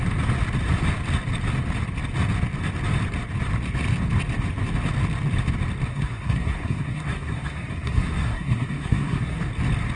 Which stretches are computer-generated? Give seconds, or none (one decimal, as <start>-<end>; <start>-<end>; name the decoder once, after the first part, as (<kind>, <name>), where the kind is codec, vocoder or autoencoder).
5.9-9.4 (codec, SNAC)